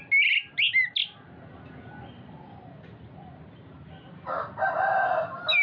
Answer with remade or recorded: recorded